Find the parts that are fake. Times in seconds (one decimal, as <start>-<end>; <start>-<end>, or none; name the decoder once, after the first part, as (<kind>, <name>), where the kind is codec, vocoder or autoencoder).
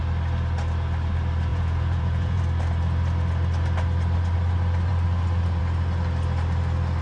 1.5-2.4 (vocoder, Vocos)